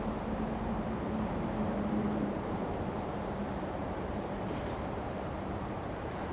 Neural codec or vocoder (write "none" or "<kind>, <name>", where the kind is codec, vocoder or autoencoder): vocoder, BigVGAN v2